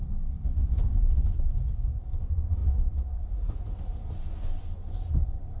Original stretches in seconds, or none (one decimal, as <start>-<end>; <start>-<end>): 0.0-0.6; 1.3-5.6